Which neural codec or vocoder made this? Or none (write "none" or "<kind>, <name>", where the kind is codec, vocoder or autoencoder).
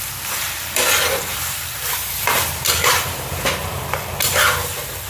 none